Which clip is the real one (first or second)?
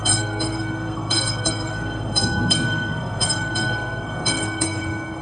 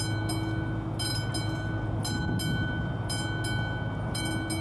second